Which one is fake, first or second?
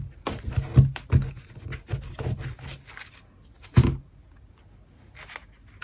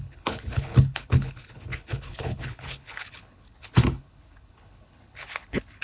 second